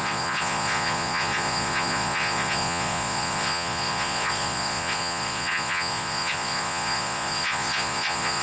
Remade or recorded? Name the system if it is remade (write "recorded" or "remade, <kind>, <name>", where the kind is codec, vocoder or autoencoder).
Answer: remade, vocoder, Vocos